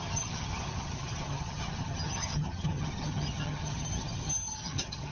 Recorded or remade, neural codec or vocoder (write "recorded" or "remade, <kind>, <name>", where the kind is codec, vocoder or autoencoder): remade, vocoder, HiFi-GAN